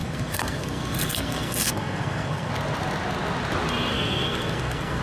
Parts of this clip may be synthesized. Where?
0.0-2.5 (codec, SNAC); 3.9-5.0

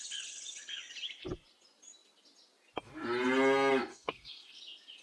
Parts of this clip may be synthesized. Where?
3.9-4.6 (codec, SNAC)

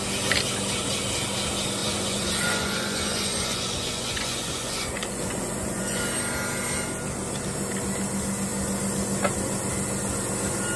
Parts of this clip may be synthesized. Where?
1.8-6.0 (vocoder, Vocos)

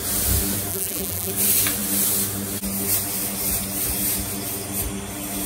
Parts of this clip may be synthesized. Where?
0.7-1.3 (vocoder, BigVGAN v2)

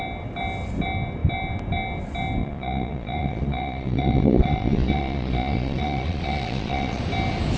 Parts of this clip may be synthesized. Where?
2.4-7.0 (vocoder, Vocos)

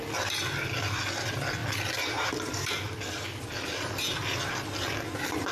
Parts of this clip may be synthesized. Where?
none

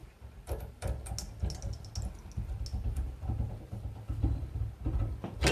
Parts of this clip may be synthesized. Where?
0.0-1.1 (vocoder, BigVGAN v2); 2.7-3.5